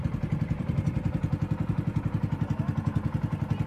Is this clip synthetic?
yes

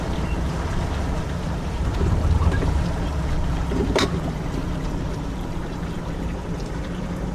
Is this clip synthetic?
yes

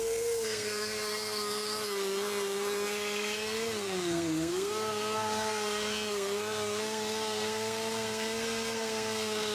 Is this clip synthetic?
yes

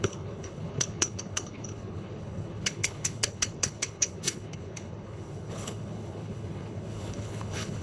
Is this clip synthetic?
yes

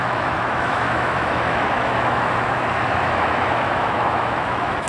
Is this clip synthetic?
yes